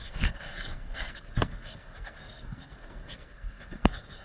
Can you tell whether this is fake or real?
fake